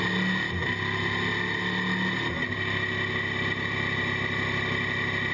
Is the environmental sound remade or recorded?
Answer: recorded